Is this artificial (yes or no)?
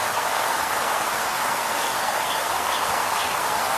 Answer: yes